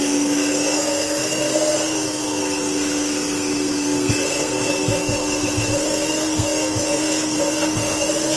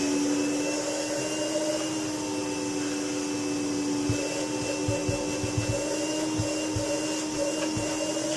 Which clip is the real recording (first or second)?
second